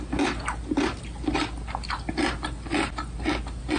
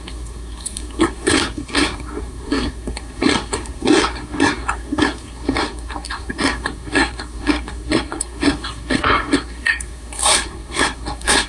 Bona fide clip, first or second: first